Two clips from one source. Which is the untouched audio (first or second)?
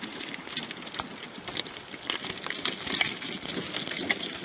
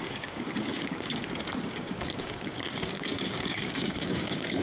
first